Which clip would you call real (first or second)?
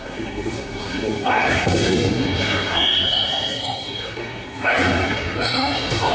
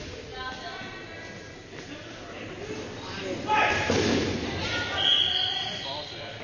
second